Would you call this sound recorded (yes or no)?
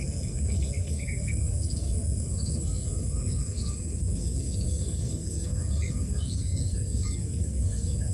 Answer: no